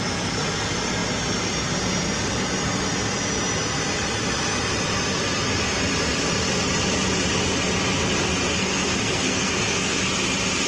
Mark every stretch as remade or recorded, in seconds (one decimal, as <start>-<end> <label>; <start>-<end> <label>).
0.0-8.5 recorded; 8.5-10.0 remade; 10.0-10.7 recorded